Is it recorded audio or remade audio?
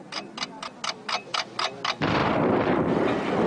recorded